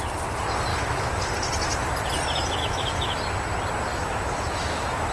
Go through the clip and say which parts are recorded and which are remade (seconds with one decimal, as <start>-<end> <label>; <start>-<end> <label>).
0.0-0.7 recorded; 0.7-1.2 remade; 1.2-2.6 recorded; 2.6-3.2 remade; 3.2-3.9 recorded; 3.9-5.1 remade